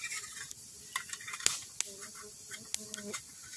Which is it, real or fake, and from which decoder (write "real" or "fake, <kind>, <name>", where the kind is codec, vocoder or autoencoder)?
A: real